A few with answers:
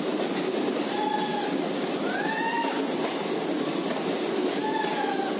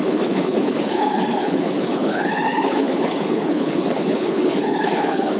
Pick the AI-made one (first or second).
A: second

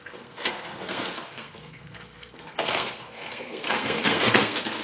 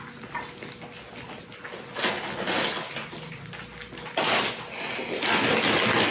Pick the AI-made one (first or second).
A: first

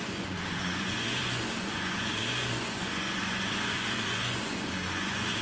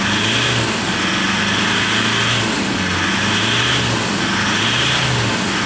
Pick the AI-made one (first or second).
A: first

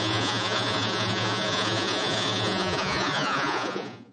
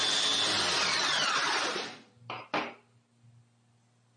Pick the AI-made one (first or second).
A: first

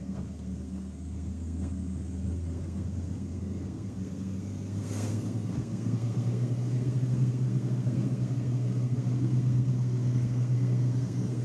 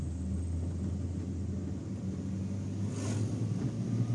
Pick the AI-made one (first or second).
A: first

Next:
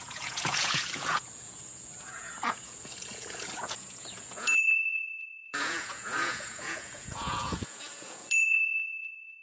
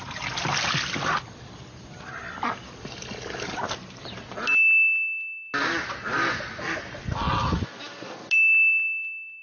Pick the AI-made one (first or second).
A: first